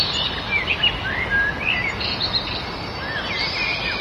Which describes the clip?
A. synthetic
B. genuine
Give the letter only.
B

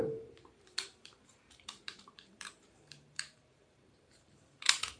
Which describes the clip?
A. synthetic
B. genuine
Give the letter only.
A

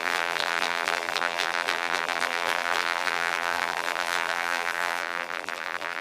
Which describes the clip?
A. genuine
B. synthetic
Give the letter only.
B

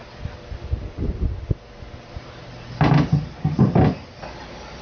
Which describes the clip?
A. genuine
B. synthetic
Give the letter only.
A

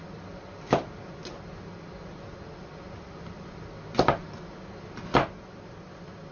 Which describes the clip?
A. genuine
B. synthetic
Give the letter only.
A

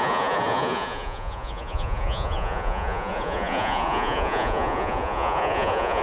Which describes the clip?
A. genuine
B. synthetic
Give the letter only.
B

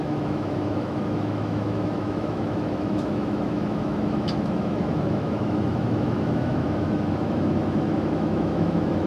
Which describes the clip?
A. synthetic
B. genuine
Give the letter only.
A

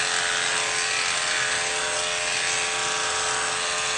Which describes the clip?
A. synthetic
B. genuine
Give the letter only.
B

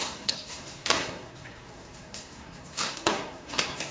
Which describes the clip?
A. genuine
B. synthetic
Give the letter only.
B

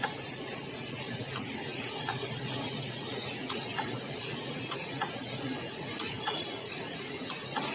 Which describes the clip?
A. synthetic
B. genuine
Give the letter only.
A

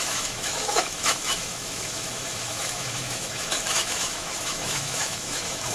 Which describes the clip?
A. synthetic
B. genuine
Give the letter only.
A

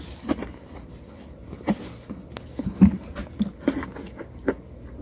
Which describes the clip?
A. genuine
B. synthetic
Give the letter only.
A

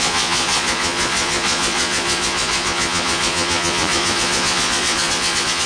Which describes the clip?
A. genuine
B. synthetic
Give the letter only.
B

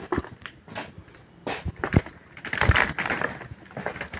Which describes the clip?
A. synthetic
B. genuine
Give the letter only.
B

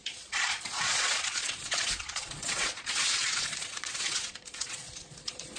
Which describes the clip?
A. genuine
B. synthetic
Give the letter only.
B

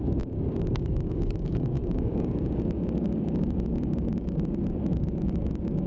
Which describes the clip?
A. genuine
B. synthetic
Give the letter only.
B